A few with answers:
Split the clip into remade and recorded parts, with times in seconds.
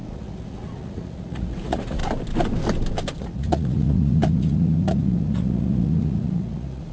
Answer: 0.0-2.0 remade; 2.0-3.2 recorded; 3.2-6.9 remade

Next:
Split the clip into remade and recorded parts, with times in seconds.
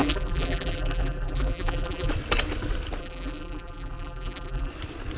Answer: 0.0-2.1 remade; 2.1-3.0 recorded; 3.0-4.7 remade; 4.7-5.2 recorded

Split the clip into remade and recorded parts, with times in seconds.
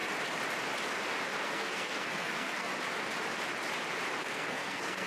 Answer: 0.0-1.4 recorded; 1.4-2.7 remade; 2.7-4.2 recorded; 4.2-5.1 remade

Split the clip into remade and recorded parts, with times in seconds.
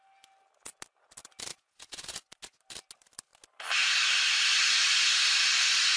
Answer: 0.0-1.5 recorded; 1.5-2.1 remade; 2.1-6.0 recorded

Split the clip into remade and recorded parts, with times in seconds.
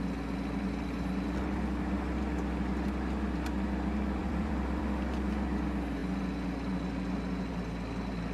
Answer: 0.0-4.2 recorded; 4.2-4.8 remade; 4.8-8.3 recorded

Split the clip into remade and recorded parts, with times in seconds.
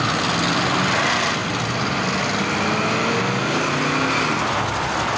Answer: 0.0-5.2 recorded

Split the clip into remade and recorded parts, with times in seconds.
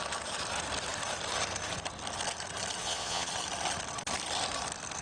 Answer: 0.0-2.8 recorded; 2.8-3.3 remade; 3.3-5.0 recorded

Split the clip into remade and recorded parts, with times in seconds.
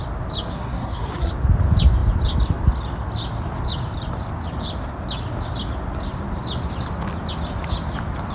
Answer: 0.0-0.5 recorded; 0.5-1.3 remade; 1.3-8.3 recorded